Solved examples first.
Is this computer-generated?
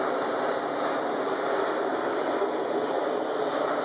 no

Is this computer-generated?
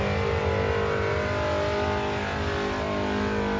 no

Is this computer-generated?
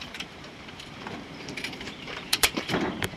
yes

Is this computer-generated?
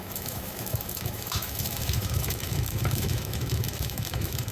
yes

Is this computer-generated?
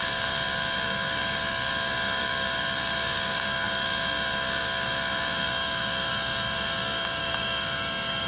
yes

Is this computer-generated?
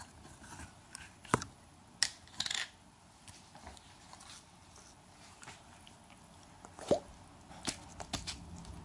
no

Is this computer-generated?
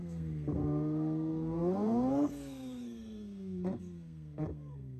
yes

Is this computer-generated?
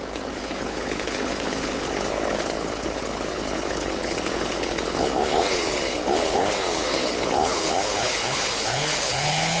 yes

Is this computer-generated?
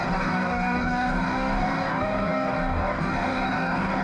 yes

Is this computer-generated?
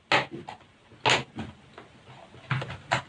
no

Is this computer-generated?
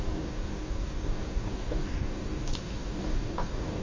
yes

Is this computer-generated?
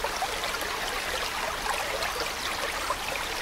no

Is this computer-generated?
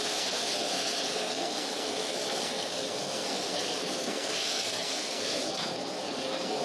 yes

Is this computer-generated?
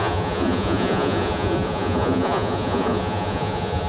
yes